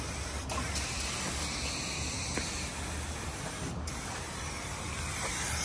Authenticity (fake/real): real